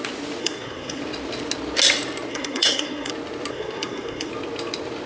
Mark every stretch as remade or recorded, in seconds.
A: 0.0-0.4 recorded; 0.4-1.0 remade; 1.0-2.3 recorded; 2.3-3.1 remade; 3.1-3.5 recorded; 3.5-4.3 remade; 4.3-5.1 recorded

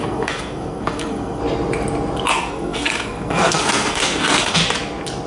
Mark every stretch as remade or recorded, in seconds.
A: 0.0-1.4 remade; 1.4-2.3 recorded; 2.3-4.6 remade; 4.6-5.3 recorded

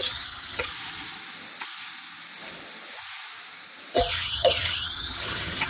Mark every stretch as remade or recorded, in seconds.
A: 0.0-0.7 remade; 0.7-4.1 recorded; 4.1-5.7 remade